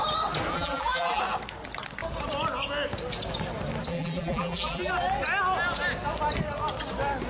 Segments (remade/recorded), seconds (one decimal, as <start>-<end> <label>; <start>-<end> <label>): 0.0-0.5 recorded; 0.5-1.2 remade; 1.2-3.9 recorded; 3.9-4.9 remade; 4.9-7.3 recorded